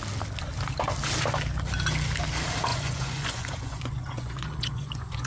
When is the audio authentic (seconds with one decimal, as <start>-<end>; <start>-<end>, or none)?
0.0-2.7